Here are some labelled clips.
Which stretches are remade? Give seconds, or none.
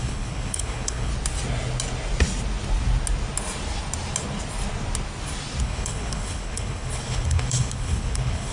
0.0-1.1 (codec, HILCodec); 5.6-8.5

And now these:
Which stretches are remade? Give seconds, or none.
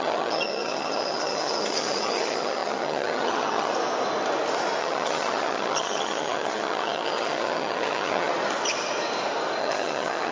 0.0-3.7 (vocoder, HiFi-GAN); 4.8-8.3; 9.6-10.3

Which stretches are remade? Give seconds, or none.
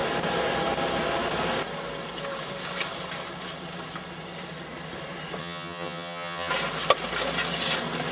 5.4-6.5 (vocoder, HiFi-GAN)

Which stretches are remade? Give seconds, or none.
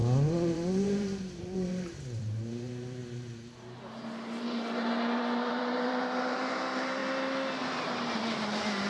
0.0-3.0 (vocoder, BigVGAN v2); 5.5-7.0; 7.6-8.9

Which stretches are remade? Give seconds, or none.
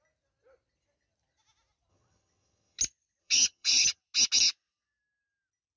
1.9-2.8 (vocoder, HiFi-GAN); 3.2-4.0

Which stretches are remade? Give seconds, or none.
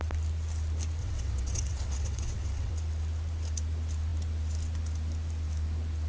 1.0-2.7 (vocoder, WaveNeXt)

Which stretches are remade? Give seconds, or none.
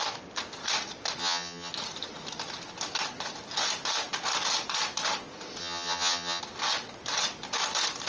1.2-1.7 (vocoder, HiFi-GAN); 5.6-6.4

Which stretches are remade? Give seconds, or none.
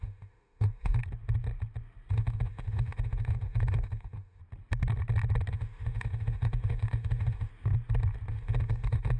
0.0-1.0 (autoencoder, DAC-VAE); 2.1-4.4; 5.5-7.5; 8.3-9.2